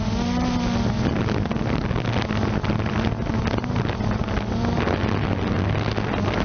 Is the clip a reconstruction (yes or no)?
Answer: no